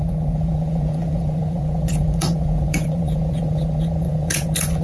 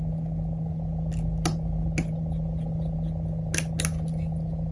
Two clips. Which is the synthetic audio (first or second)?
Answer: first